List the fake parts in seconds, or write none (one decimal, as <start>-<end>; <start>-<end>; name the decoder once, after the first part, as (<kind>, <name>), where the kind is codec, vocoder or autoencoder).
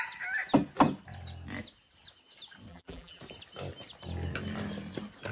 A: 2.7-3.2 (vocoder, BigVGAN v2)